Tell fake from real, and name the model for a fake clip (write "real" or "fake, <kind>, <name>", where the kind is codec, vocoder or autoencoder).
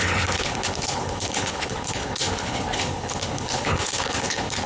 fake, codec, HILCodec